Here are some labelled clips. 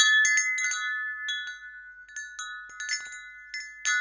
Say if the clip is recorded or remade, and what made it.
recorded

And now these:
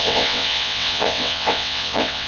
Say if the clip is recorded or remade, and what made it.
remade, vocoder, WaveNeXt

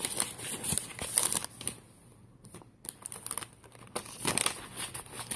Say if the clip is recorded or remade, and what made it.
recorded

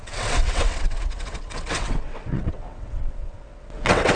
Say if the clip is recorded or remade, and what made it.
remade, vocoder, WaveNeXt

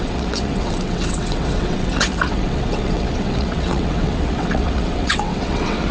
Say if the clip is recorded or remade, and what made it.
remade, vocoder, WaveNeXt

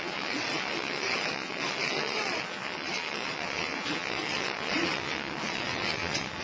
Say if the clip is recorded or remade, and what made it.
remade, vocoder, WaveNeXt